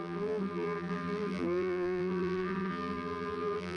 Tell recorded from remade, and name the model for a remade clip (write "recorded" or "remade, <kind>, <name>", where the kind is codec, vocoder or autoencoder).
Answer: remade, vocoder, BigVGAN v2